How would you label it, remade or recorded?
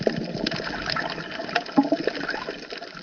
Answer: recorded